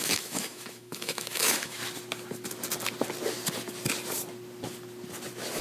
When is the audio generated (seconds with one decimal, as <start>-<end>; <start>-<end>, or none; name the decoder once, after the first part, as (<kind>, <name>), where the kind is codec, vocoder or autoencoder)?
0.0-1.8 (autoencoder, DAC-VAE)